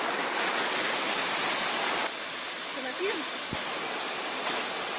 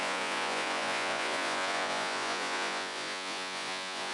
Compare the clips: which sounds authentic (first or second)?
first